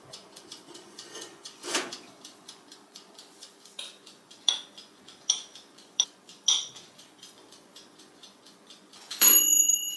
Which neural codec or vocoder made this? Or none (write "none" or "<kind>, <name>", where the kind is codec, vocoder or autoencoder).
vocoder, Vocos